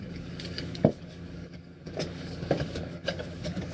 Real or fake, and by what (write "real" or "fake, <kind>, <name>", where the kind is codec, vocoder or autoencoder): fake, codec, DAC